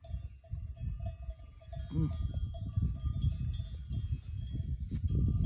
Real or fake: real